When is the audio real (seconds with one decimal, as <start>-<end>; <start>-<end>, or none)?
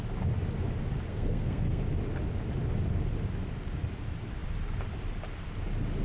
0.0-1.1; 1.8-6.0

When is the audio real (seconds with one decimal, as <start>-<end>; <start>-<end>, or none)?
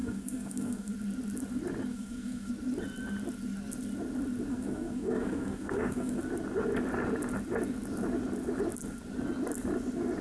0.9-1.9; 2.5-4.5; 6.2-10.2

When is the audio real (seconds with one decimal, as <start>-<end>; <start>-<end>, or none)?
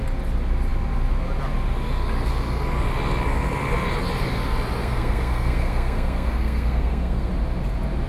0.0-4.8; 7.3-8.1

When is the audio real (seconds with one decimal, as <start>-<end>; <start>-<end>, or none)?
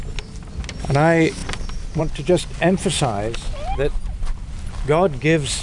0.0-5.6